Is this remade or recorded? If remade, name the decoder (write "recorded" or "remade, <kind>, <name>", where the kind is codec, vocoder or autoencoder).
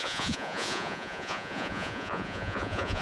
remade, vocoder, Vocos